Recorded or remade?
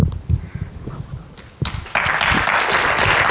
recorded